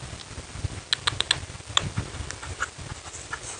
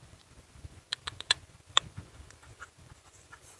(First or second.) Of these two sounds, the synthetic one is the second